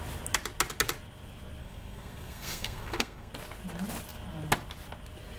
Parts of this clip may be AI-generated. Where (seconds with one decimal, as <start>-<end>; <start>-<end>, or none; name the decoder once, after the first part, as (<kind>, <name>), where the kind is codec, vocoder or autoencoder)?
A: 1.6-3.3 (codec, SNAC)